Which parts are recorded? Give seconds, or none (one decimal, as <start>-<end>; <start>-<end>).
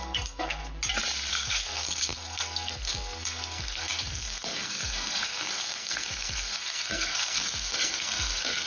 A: 0.6-1.3